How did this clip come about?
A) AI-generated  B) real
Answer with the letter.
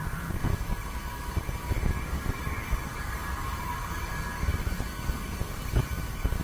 A